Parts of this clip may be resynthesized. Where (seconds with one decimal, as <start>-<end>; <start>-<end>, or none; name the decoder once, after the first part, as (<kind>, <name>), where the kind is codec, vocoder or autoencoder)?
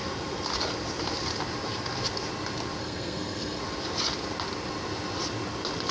2.8-3.6 (codec, SNAC)